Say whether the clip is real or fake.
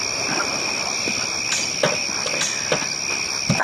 real